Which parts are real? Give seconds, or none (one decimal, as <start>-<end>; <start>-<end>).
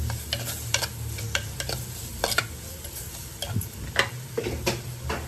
0.0-2.0